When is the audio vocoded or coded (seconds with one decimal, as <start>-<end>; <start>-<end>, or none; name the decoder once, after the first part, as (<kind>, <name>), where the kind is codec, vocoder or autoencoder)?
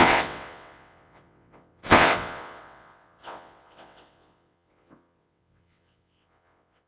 0.0-6.9 (vocoder, WaveNeXt)